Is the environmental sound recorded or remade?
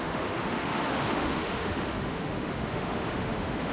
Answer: remade